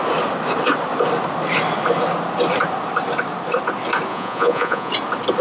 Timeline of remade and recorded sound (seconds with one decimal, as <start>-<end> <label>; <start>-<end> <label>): 0.0-4.1 recorded; 4.1-4.9 remade; 4.9-5.4 recorded